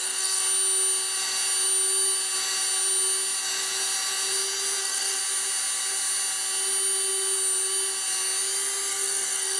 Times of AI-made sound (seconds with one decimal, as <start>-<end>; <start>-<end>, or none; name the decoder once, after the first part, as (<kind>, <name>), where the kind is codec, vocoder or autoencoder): 0.0-0.4 (codec, SNAC); 4.8-5.2; 8.9-9.6